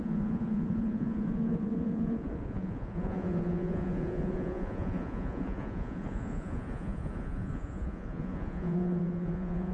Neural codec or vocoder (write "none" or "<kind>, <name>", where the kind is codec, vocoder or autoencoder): vocoder, Vocos